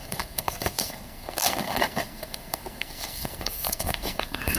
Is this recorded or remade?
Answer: remade